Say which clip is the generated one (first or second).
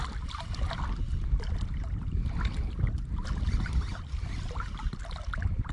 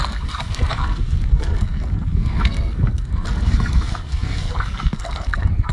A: second